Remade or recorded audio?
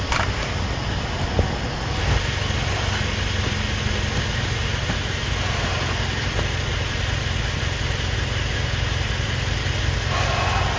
recorded